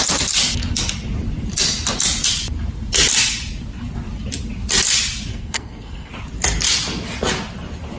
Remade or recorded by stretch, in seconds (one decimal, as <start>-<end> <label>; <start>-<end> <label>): 0.0-5.3 recorded; 5.3-6.1 remade; 6.1-8.0 recorded